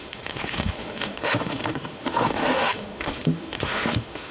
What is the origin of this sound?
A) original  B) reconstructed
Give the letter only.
B